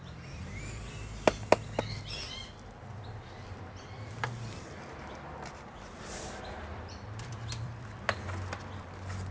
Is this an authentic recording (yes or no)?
no